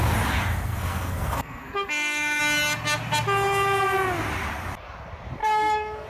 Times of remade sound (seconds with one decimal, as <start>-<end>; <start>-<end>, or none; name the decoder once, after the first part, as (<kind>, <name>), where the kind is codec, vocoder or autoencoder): 0.5-2.4 (codec, SNAC); 5.4-6.1